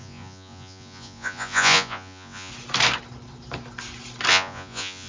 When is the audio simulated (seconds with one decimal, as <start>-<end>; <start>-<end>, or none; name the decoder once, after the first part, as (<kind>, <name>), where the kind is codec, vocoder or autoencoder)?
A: 0.0-2.5 (vocoder, Vocos); 4.3-5.1